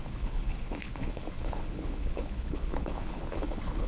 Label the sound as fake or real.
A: fake